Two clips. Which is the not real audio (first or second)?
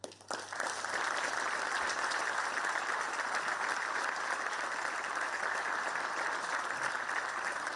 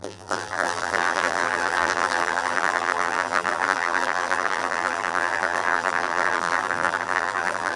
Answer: second